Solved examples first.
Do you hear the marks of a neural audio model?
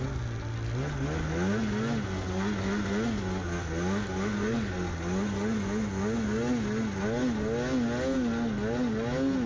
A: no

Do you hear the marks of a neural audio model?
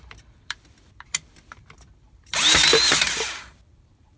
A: yes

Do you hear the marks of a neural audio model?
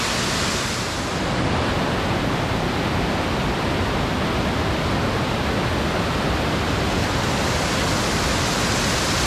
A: no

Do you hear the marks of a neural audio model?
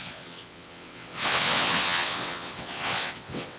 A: yes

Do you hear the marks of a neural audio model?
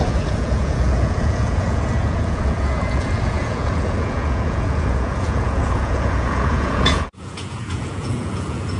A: yes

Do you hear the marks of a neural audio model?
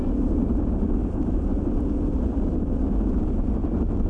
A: no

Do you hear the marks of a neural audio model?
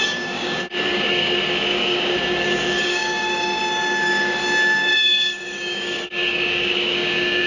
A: yes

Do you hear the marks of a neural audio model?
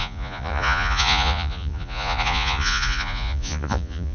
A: yes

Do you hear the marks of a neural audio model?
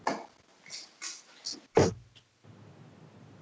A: no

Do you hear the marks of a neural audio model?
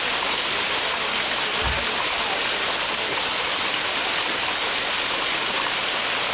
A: no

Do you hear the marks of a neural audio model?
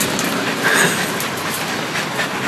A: no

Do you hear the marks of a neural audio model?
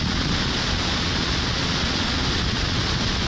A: yes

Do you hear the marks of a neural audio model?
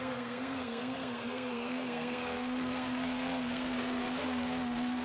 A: yes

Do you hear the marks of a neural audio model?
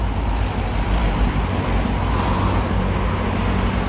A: no